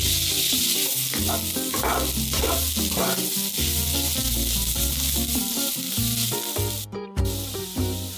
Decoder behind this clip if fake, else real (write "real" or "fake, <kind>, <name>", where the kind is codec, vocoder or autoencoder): real